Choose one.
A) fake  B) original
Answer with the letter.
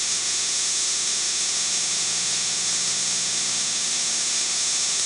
A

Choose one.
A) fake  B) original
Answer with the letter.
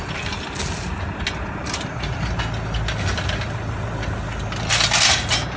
B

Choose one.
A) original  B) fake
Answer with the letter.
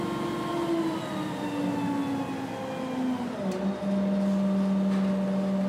A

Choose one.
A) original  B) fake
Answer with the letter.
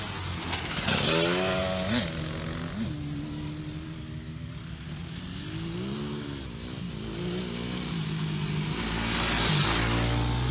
A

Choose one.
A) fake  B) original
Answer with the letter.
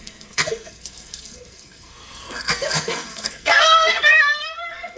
A